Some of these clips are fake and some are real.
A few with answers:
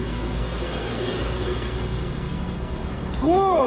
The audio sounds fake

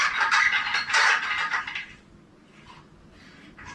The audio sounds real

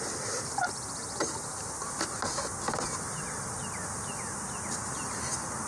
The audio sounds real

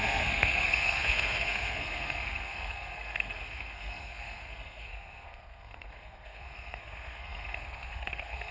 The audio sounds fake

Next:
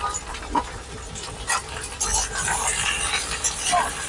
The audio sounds real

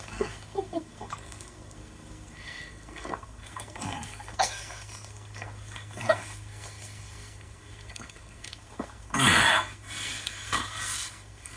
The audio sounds fake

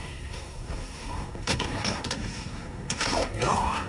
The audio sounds fake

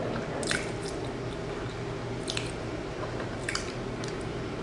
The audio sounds real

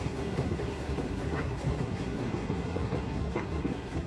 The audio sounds fake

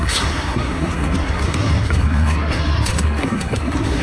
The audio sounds fake